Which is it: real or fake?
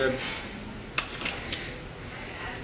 real